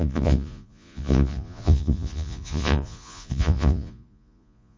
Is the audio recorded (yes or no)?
no